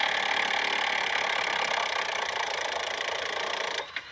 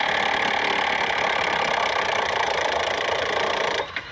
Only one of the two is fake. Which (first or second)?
second